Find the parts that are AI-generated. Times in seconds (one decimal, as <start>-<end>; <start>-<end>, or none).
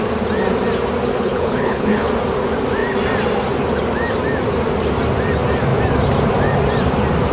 1.1-2.1